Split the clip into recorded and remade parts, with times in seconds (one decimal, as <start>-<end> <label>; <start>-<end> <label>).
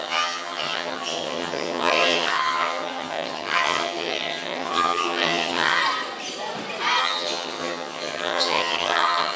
0.0-5.8 remade; 5.8-7.0 recorded; 7.0-9.4 remade